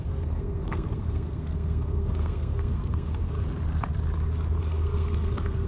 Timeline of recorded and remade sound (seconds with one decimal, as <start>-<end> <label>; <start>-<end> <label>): 0.0-3.4 remade; 3.4-4.6 recorded; 4.6-5.7 remade